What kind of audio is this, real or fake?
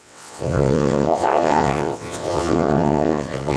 fake